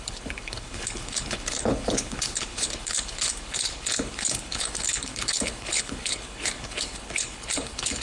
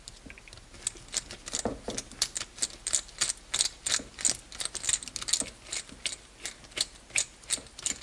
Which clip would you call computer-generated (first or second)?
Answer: first